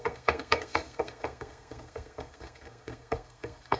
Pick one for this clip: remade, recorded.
remade